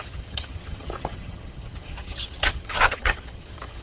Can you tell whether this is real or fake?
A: fake